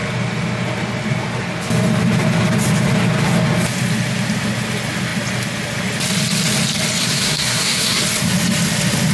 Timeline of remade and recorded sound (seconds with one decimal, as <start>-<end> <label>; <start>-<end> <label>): 0.0-7.0 recorded; 7.0-8.0 remade; 8.0-9.1 recorded